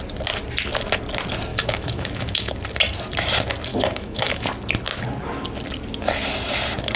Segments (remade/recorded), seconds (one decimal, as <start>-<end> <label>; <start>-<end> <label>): 0.0-1.5 recorded; 1.5-2.5 remade; 2.5-3.7 recorded; 3.7-4.5 remade; 4.5-7.0 recorded